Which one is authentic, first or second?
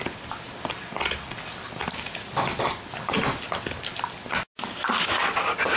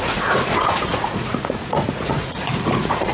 first